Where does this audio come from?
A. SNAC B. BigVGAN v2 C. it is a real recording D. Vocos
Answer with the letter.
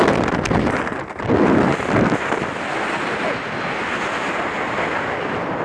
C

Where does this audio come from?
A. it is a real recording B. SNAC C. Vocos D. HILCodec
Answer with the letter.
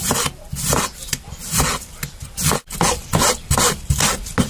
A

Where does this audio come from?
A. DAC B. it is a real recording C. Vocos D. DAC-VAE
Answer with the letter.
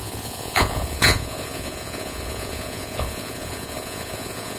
C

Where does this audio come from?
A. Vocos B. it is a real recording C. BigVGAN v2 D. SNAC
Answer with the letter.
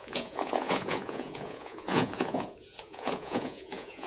A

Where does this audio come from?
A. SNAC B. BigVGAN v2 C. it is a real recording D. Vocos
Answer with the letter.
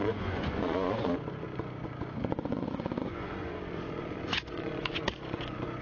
D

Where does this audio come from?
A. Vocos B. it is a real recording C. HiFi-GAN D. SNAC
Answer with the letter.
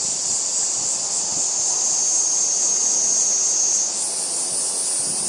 B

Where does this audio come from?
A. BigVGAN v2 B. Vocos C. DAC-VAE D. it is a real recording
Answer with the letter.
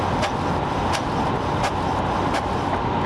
D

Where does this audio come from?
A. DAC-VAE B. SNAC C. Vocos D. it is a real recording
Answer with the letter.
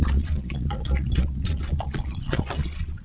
C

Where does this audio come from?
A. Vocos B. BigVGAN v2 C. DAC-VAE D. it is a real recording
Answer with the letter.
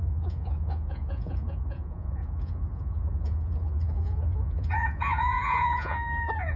A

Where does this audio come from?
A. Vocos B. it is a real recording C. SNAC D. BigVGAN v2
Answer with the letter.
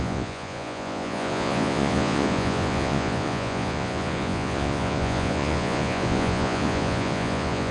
A